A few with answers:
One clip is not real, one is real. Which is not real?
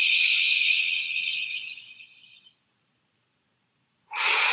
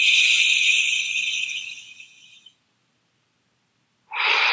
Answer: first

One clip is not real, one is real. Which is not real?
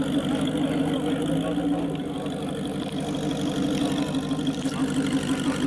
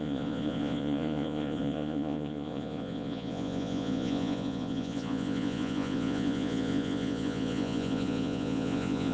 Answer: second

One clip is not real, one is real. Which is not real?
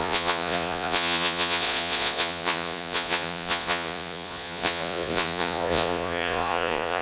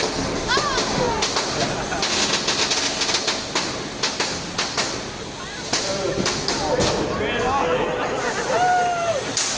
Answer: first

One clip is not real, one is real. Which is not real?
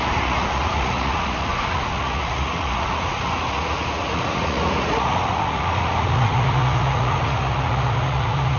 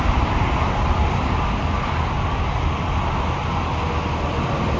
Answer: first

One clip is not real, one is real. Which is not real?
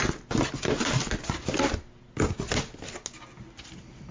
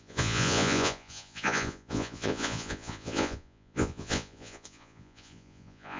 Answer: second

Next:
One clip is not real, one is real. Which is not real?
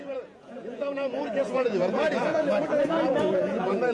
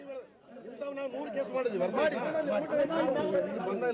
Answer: first